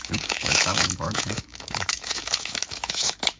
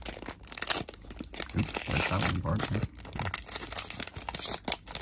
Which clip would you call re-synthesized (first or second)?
first